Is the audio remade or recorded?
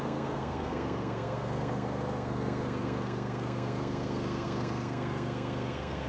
remade